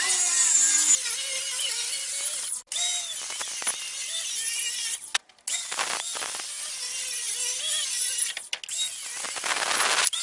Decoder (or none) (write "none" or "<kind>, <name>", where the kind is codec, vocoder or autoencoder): none